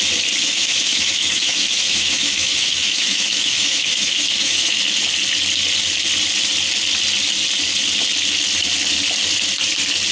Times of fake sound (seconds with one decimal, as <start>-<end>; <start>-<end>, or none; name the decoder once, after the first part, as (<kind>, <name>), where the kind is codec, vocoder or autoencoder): 0.4-4.8 (autoencoder, DAC-VAE)